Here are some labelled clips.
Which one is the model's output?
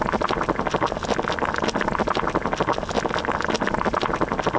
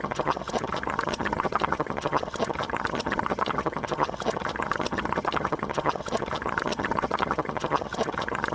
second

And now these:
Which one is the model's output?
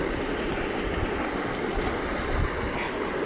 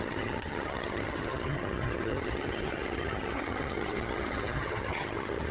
second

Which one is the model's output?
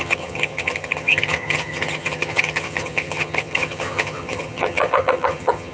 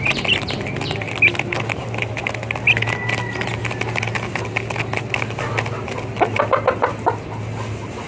first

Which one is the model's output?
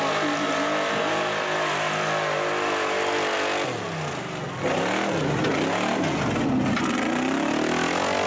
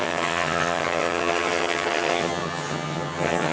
second